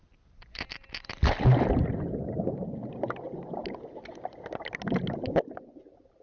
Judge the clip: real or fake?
real